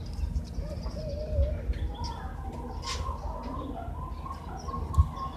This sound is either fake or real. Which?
real